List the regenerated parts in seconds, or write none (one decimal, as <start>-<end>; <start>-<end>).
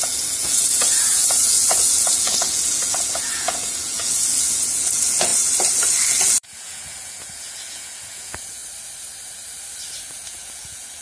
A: 0.0-5.3; 6.3-8.6; 10.1-11.0